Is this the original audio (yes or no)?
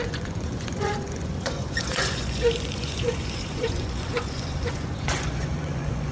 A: no